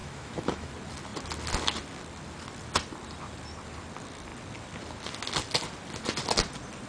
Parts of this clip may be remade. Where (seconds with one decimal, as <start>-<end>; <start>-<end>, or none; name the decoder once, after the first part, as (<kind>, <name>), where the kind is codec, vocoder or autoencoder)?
0.0-0.7 (autoencoder, DAC-VAE)